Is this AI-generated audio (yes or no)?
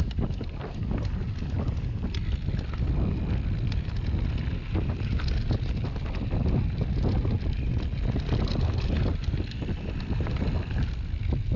no